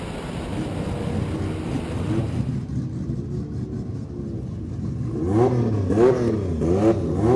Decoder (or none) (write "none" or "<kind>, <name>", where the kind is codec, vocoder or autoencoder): none